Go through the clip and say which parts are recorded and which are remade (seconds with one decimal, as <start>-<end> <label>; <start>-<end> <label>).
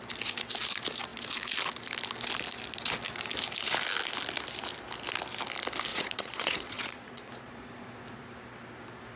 0.0-5.9 recorded; 5.9-7.7 remade; 7.7-9.2 recorded